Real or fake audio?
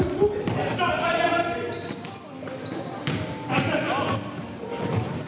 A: real